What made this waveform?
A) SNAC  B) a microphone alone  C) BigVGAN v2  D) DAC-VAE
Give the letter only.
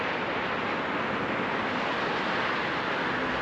B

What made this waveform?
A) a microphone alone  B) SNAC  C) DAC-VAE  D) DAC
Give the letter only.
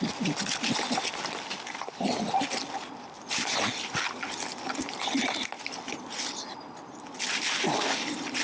A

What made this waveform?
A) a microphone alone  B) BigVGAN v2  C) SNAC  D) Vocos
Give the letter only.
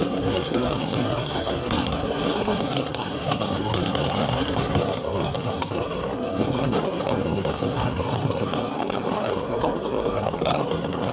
C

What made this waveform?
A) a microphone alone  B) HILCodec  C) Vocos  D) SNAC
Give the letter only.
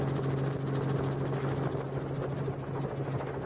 A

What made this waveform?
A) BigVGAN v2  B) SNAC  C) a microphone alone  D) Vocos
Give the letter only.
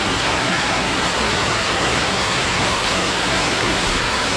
B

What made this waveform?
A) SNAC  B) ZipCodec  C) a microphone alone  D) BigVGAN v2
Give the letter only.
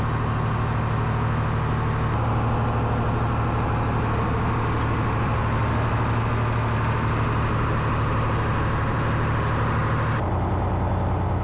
C